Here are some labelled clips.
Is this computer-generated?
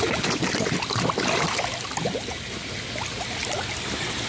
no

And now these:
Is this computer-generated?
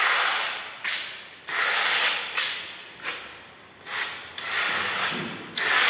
no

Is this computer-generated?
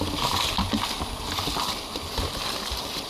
no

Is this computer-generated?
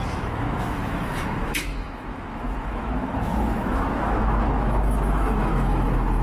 yes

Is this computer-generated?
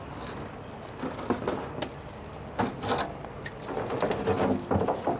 no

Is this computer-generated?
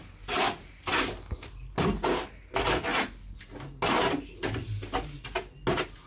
no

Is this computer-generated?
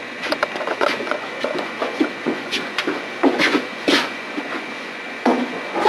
yes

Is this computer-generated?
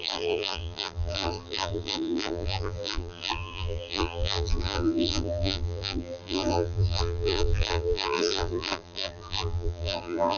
yes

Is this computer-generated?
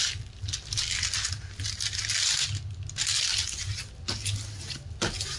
no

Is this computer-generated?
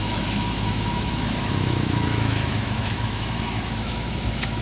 yes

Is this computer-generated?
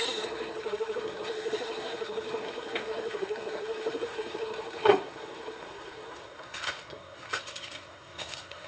yes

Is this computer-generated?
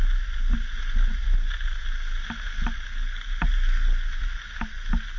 no